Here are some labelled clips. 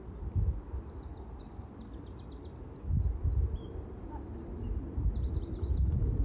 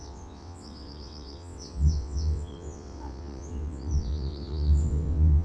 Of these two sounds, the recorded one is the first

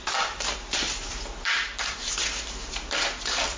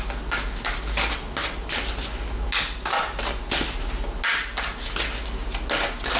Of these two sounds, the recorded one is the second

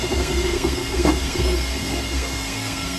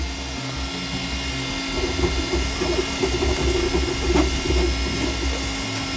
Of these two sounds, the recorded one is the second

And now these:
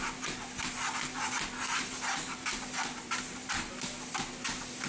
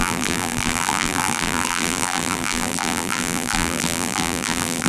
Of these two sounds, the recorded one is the first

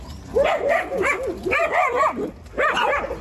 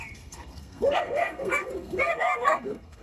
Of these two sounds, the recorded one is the first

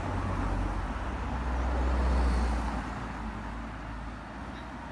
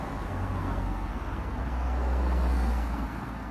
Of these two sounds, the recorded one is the first